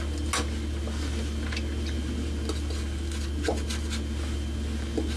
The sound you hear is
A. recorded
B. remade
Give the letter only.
A